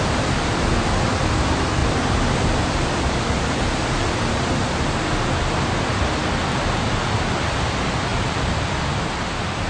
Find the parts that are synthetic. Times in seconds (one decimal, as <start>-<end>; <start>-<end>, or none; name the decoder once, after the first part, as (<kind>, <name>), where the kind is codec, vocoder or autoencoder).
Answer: 1.8-3.1 (vocoder, BigVGAN v2); 8.1-8.8